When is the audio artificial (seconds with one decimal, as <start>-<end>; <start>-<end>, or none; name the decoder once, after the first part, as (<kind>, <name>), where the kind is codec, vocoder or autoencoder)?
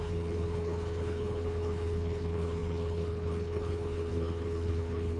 0.0-5.2 (codec, HILCodec)